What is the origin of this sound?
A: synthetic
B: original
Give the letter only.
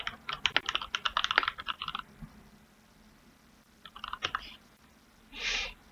B